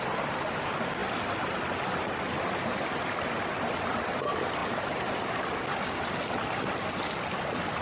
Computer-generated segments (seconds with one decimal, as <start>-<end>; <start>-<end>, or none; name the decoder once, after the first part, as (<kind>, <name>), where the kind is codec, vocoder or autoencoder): none